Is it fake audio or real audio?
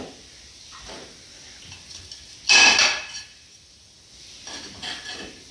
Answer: real